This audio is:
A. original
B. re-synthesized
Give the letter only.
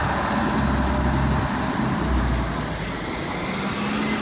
A